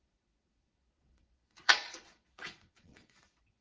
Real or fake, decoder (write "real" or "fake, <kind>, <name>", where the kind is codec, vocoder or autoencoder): fake, vocoder, Vocos